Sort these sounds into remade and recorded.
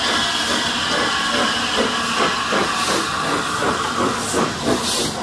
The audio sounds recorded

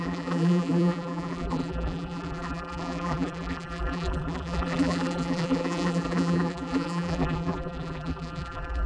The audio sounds remade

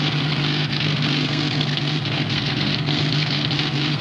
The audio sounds remade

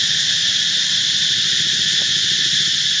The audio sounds recorded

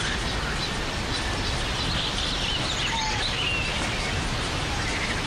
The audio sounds recorded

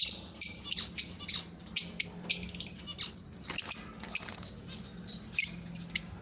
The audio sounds recorded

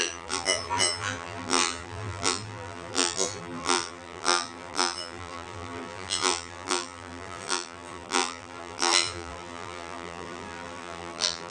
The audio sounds remade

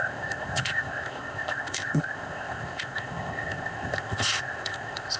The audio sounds remade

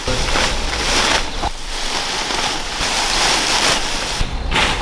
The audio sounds recorded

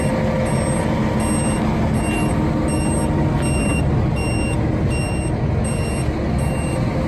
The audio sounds recorded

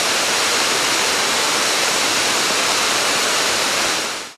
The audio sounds recorded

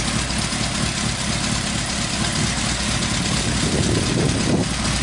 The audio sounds recorded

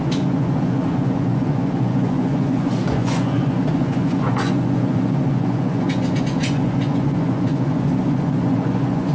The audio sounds remade